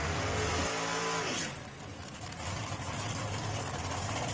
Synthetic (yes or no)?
no